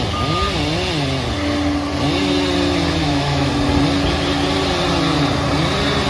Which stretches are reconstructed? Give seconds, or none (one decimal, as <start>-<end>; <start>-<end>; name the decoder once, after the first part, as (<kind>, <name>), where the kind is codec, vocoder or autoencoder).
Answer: 3.0-3.5 (autoencoder, DAC-VAE)